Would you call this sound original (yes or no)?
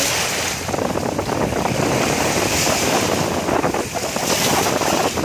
no